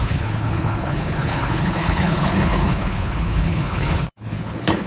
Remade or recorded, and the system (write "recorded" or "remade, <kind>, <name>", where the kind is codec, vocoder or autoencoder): remade, codec, HILCodec